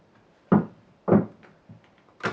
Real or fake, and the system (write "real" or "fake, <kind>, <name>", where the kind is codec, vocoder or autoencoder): real